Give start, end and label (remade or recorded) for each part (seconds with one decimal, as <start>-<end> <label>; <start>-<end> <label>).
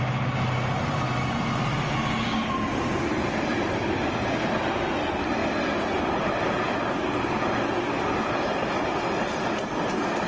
0.0-2.7 recorded; 2.7-3.7 remade; 3.7-10.3 recorded